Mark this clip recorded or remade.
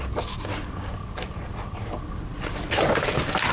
recorded